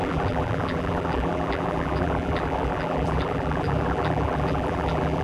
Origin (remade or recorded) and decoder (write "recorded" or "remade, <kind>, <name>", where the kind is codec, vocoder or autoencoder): remade, vocoder, BigVGAN v2